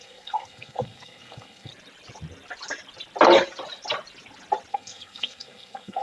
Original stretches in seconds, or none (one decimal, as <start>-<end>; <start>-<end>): 1.7-4.7